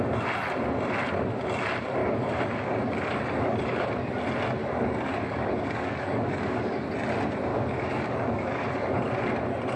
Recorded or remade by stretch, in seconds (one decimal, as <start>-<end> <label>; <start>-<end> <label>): 0.0-2.0 recorded; 2.0-3.9 remade; 3.9-4.6 recorded; 4.6-6.9 remade; 6.9-7.5 recorded; 7.5-9.0 remade; 9.0-9.8 recorded